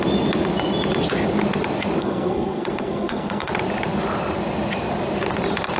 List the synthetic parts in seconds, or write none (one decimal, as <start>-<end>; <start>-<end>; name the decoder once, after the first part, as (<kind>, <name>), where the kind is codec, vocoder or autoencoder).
2.0-3.5 (codec, SNAC)